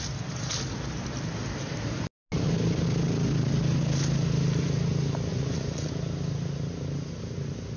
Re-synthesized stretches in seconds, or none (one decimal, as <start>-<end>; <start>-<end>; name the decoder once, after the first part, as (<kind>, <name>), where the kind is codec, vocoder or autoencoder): 5.3-5.9 (vocoder, Vocos)